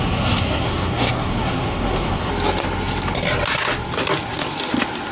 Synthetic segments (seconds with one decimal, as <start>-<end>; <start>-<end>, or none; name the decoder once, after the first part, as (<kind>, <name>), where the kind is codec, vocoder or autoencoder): 0.0-2.3 (codec, SNAC)